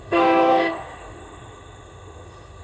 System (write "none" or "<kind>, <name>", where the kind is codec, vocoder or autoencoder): autoencoder, DAC-VAE